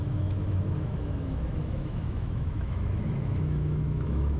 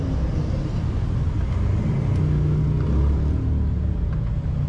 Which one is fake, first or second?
first